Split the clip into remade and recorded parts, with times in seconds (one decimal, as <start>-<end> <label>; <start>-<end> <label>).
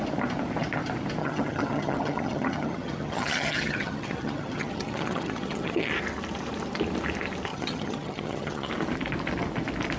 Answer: 0.0-1.2 recorded; 1.2-5.9 remade; 5.9-7.5 recorded; 7.5-8.7 remade; 8.7-10.0 recorded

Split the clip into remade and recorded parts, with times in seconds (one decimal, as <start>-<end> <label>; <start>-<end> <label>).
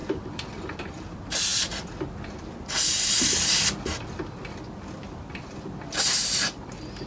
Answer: 0.0-7.1 recorded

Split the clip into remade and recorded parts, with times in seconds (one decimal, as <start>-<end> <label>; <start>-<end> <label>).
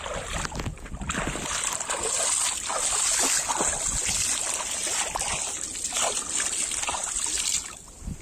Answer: 0.0-8.2 recorded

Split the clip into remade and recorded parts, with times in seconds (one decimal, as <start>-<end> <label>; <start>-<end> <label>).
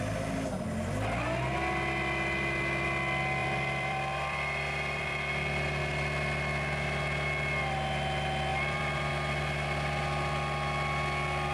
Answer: 0.0-3.4 recorded; 3.4-5.8 remade; 5.8-8.5 recorded; 8.5-9.1 remade; 9.1-11.5 recorded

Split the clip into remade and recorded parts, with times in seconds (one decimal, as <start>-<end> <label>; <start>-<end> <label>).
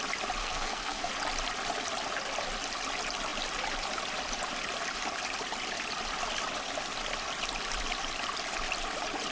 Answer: 0.0-0.4 recorded; 0.4-1.1 remade; 1.1-9.3 recorded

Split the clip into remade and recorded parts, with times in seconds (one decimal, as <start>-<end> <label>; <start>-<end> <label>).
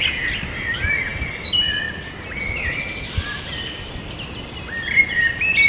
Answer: 0.0-5.7 recorded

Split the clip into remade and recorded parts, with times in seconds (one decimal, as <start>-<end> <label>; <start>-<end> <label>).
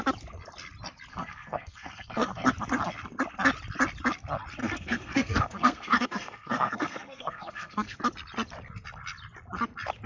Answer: 0.0-1.1 recorded; 1.1-2.5 remade; 2.5-4.6 recorded; 4.6-8.0 remade; 8.0-10.1 recorded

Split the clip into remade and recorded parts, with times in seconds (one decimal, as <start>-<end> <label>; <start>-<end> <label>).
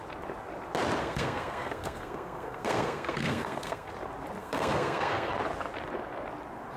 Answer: 0.0-1.0 recorded; 1.0-3.9 remade; 3.9-4.4 recorded; 4.4-5.3 remade; 5.3-6.8 recorded